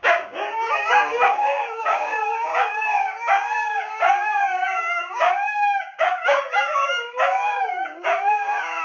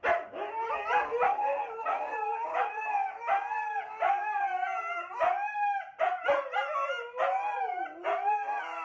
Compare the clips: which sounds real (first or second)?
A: second